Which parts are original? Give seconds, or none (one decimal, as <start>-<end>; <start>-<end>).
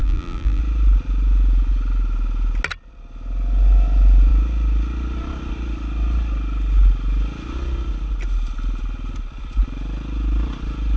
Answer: 0.6-11.0